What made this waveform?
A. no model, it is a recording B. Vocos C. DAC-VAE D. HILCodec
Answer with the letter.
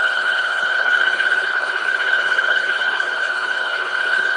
D